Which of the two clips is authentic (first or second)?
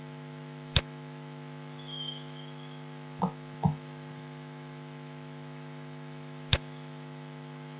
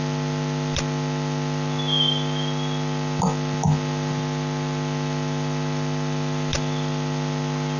second